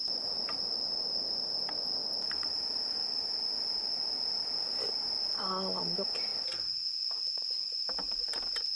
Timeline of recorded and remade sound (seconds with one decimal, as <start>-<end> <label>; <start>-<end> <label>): 0.0-2.0 recorded; 2.0-2.5 remade; 2.5-8.8 recorded